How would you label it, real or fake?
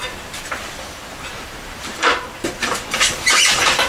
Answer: fake